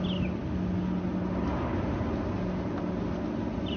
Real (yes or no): yes